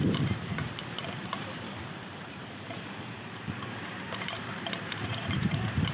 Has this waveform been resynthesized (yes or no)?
yes